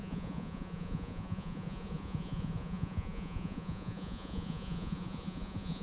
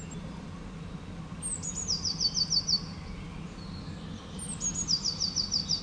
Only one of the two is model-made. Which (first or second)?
first